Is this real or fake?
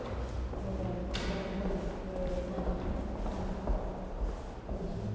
real